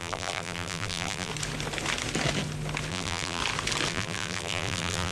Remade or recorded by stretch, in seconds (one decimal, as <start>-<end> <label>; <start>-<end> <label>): 0.0-1.3 remade; 1.3-2.9 recorded; 2.9-3.4 remade; 3.4-3.9 recorded; 3.9-5.1 remade